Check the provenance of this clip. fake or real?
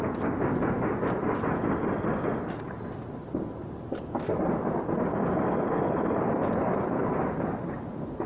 real